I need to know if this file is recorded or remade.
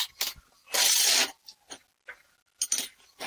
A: recorded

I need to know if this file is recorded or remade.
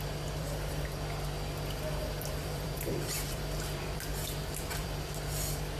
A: remade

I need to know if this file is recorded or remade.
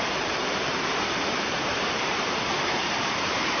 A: remade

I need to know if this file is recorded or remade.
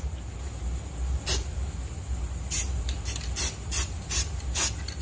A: recorded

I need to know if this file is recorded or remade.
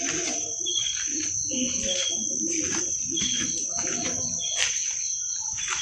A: remade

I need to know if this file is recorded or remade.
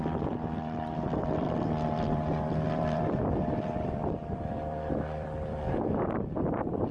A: remade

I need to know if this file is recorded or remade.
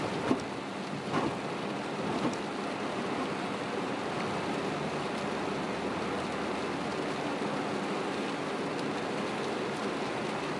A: recorded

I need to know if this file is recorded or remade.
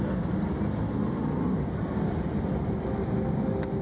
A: recorded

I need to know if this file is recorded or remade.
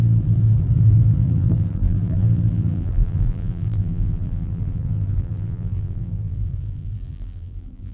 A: remade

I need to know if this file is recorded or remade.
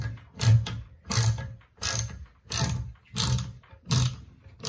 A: recorded